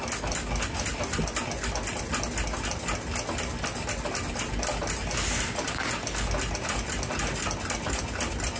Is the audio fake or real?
real